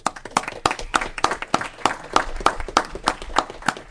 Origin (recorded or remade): recorded